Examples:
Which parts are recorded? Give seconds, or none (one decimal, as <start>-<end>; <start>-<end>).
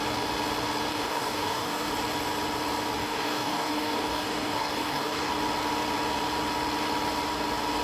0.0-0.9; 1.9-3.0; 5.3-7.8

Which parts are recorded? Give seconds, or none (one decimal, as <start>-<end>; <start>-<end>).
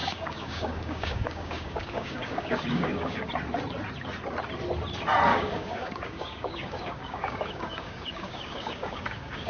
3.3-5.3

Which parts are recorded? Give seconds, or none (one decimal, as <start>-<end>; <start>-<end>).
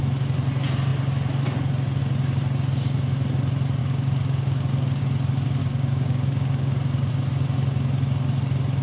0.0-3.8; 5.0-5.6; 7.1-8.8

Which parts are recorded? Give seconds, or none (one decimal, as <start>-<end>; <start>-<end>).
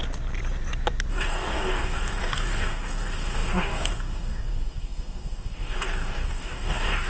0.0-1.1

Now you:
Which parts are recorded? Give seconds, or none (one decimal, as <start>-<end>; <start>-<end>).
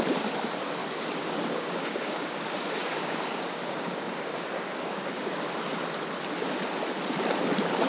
0.0-0.8; 5.4-7.9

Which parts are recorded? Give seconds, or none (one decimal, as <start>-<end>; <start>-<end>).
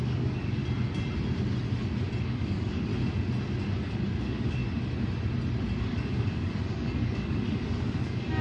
0.6-2.2; 2.9-3.6; 4.6-5.8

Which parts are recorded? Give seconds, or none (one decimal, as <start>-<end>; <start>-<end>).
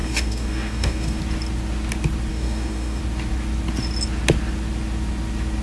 1.2-2.3; 3.0-5.6